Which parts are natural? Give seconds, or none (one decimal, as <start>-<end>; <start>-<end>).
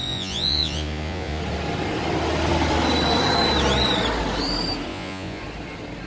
1.4-4.9; 5.4-6.1